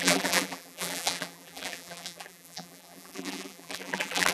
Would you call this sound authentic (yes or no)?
no